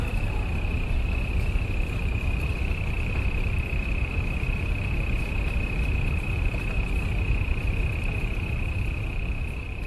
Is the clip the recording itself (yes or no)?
no